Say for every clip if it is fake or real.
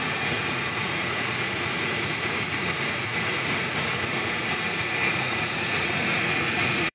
fake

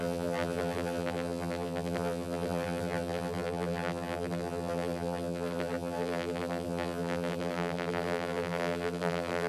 fake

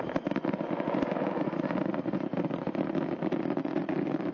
real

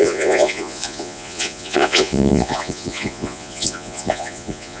fake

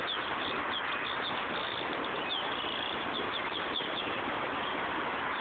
real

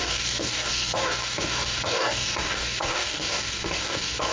fake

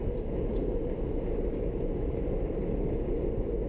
real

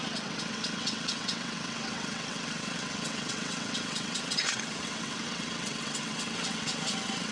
fake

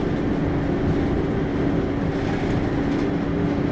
real